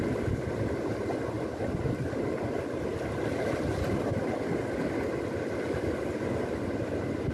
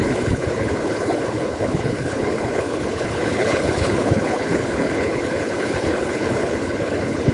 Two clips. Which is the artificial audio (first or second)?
second